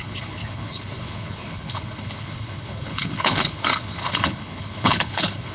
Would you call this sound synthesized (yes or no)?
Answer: yes